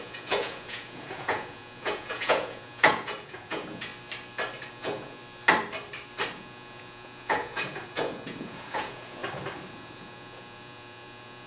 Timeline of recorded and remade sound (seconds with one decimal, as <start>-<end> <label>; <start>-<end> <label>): 0.0-3.9 remade; 3.9-4.7 recorded; 4.7-5.2 remade; 5.2-6.3 recorded; 6.3-9.2 remade; 9.2-9.7 recorded; 9.7-11.5 remade